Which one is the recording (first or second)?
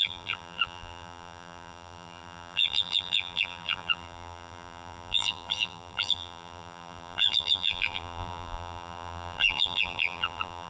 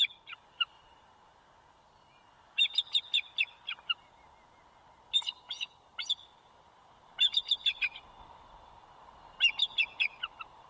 second